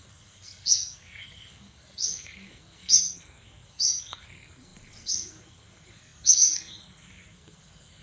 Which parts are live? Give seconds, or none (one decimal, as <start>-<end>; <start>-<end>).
none